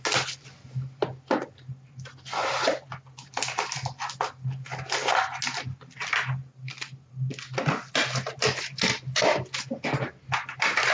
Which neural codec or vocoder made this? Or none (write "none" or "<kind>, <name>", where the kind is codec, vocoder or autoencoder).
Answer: none